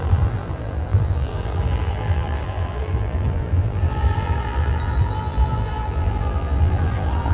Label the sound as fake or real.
fake